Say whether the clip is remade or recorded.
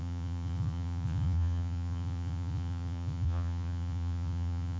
remade